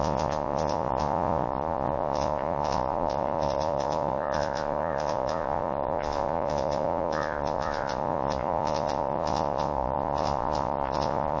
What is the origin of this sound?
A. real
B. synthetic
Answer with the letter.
B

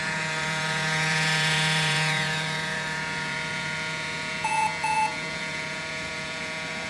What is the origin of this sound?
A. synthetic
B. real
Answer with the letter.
A